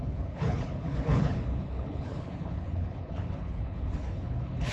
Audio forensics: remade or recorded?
remade